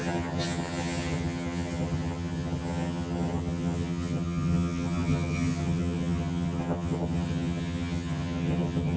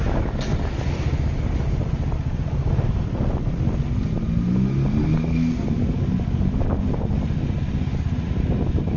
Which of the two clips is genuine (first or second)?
second